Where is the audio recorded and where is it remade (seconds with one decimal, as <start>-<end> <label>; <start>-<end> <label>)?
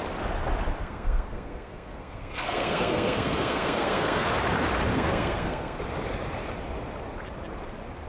0.0-0.8 recorded; 0.8-4.3 remade; 4.3-4.9 recorded; 4.9-5.8 remade; 5.8-8.1 recorded